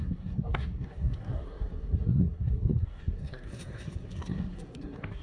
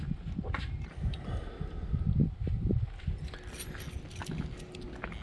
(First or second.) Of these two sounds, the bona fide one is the second